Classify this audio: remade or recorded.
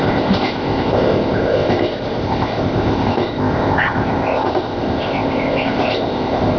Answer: remade